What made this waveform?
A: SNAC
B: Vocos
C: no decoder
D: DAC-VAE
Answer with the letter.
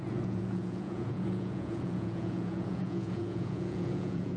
B